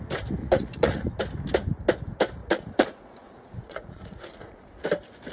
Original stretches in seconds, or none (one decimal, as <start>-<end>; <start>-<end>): 0.0-0.4; 1.2-2.4; 4.7-5.3